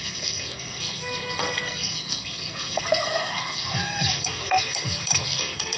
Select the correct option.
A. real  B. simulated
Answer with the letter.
B